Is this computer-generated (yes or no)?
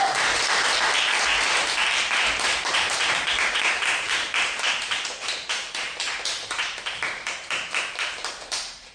yes